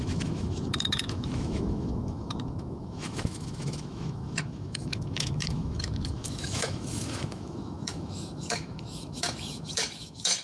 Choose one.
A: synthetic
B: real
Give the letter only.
A